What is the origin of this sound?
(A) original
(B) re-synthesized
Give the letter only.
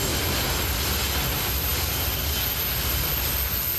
A